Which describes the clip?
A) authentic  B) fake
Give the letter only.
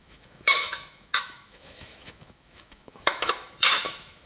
B